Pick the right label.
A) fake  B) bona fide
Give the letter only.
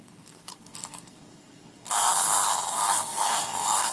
A